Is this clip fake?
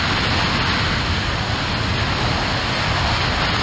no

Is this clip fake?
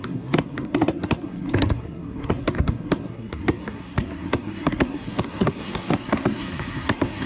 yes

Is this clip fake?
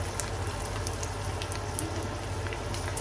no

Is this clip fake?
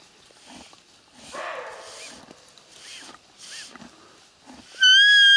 no